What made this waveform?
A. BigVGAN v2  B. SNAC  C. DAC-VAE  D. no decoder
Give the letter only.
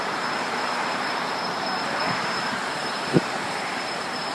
A